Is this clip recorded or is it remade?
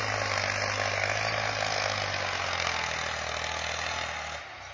recorded